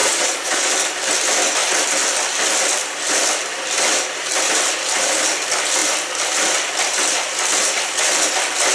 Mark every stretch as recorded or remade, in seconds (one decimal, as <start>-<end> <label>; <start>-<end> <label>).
0.0-0.7 remade; 0.7-8.7 recorded